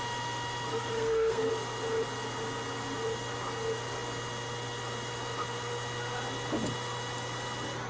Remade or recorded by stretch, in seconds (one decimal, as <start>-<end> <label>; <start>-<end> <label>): 0.0-0.7 recorded; 0.7-1.5 remade; 1.5-7.9 recorded